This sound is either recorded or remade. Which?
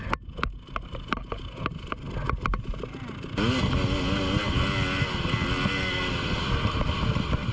recorded